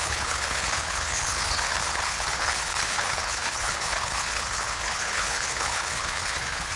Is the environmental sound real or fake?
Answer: fake